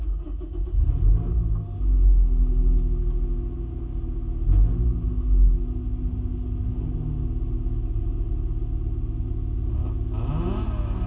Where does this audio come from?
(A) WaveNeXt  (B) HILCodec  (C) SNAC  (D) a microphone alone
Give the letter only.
D